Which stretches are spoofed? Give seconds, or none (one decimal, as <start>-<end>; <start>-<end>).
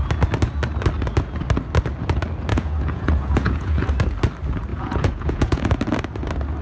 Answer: 2.5-3.9; 4.7-5.7